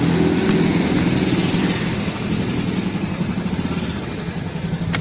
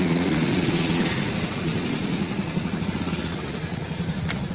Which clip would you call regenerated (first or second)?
second